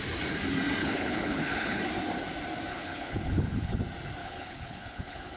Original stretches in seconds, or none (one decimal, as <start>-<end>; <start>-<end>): 0.0-0.8; 1.8-2.7; 3.8-4.2